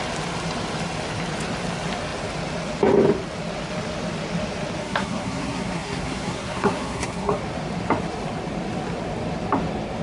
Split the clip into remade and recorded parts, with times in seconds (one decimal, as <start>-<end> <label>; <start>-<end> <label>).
0.0-4.8 recorded; 4.8-7.4 remade; 7.4-10.0 recorded